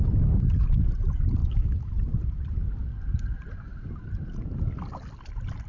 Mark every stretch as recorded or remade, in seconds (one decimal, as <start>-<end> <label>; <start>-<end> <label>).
0.0-1.4 recorded; 1.4-1.9 remade; 1.9-5.7 recorded